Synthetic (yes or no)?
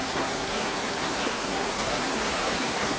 yes